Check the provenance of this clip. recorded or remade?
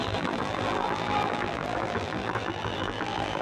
remade